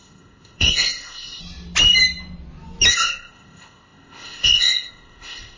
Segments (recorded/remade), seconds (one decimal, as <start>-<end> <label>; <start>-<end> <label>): 0.0-1.4 remade; 1.4-2.9 recorded; 2.9-5.6 remade